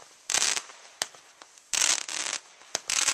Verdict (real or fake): real